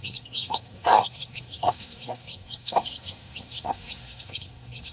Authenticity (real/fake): fake